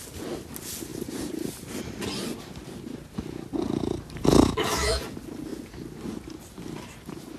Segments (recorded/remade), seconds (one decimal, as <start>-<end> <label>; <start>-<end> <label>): 0.0-4.3 recorded; 4.3-5.0 remade; 5.0-7.4 recorded